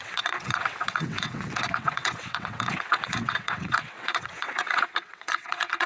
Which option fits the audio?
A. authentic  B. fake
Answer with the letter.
B